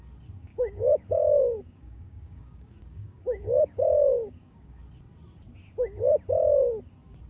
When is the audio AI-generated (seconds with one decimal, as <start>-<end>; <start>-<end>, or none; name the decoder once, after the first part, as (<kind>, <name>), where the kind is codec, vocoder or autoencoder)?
0.5-4.8 (codec, DAC)

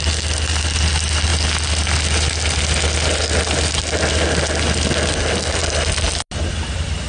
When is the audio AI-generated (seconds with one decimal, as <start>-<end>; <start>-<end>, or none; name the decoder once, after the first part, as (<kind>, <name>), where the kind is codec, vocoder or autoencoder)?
none

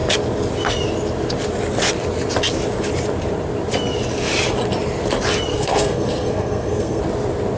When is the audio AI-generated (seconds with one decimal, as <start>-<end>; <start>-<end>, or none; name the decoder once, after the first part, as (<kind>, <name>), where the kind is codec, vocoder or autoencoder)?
5.5-7.0 (codec, SNAC)